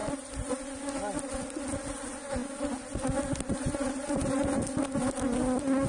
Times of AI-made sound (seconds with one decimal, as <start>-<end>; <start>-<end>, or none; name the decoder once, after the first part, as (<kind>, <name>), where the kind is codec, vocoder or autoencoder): none